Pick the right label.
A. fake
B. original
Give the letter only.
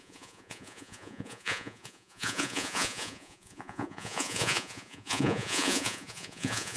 A